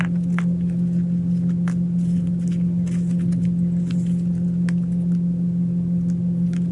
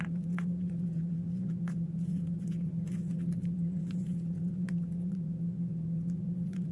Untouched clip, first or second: first